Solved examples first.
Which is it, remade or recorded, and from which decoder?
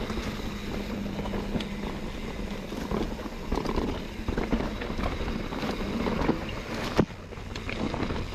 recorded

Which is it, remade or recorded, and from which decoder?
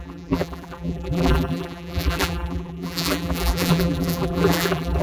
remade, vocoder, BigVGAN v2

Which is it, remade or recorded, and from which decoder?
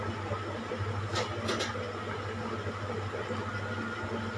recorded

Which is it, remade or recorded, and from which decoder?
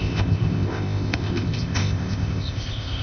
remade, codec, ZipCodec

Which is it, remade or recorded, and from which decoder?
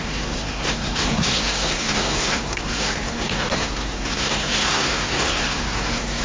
remade, codec, SNAC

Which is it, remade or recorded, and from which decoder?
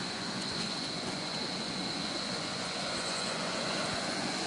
remade, vocoder, Vocos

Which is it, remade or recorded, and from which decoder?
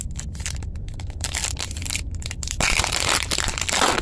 remade, vocoder, BigVGAN v2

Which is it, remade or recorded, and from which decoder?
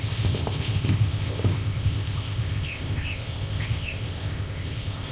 remade, codec, ZipCodec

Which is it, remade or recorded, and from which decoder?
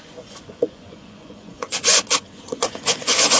remade, vocoder, Vocos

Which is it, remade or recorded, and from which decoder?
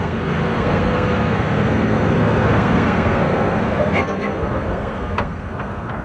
remade, codec, SNAC